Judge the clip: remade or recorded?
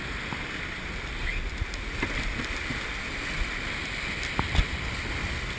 recorded